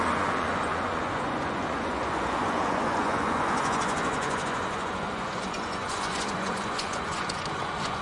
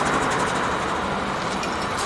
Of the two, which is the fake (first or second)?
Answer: first